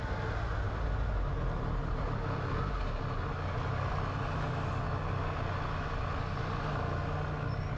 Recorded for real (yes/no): yes